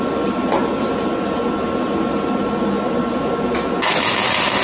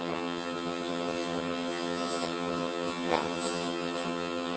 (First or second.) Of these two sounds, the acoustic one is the first